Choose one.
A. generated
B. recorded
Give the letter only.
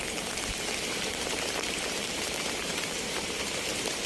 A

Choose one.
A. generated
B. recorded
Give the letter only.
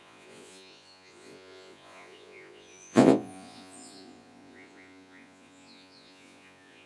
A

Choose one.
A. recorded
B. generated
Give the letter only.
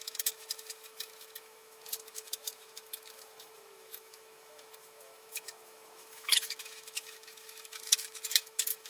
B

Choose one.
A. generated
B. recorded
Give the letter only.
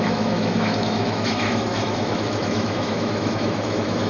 A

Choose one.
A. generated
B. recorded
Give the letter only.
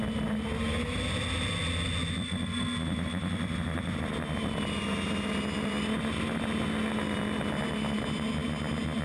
B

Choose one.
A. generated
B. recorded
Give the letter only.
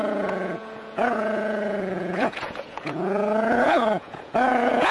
A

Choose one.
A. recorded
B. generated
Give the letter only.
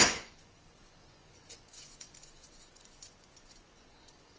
B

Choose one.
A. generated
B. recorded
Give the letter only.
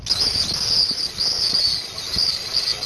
B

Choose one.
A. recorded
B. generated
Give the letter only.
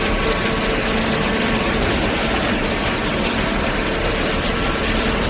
B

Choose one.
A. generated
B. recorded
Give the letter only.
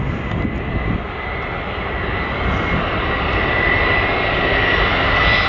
B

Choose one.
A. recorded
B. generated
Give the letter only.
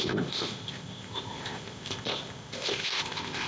B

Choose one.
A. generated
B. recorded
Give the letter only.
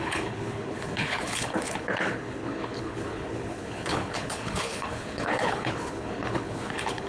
A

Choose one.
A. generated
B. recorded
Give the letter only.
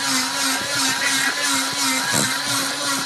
B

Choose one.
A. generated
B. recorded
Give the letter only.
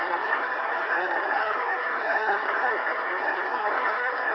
A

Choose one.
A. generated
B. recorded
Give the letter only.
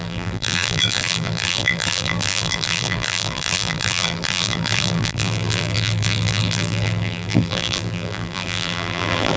A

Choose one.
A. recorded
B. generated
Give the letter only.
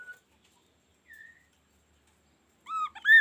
A